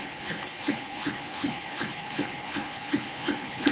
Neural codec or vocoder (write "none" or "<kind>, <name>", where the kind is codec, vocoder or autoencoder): codec, HILCodec